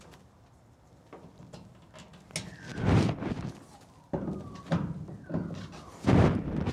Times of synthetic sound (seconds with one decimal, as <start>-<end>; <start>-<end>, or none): 2.7-6.7